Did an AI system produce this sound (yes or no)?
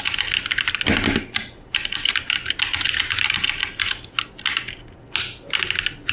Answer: no